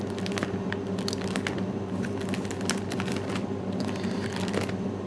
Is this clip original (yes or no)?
yes